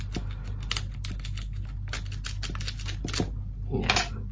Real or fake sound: real